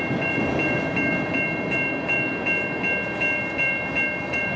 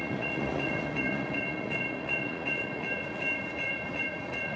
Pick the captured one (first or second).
first